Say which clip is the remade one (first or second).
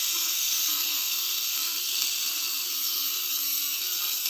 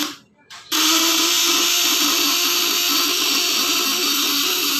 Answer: first